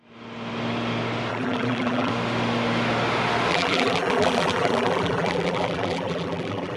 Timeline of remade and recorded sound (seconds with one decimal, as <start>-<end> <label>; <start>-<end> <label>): 0.0-1.3 recorded; 1.3-2.1 remade; 2.1-3.5 recorded; 3.5-6.8 remade